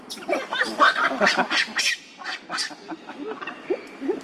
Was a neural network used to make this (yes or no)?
yes